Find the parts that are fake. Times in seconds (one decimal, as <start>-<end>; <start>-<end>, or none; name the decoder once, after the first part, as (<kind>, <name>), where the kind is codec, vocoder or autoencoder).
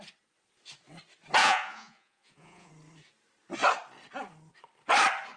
1.4-2.7 (vocoder, Vocos)